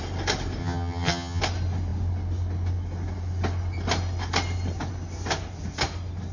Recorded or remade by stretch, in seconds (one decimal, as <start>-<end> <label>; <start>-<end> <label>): 0.0-0.6 recorded; 0.6-1.4 remade; 1.4-6.3 recorded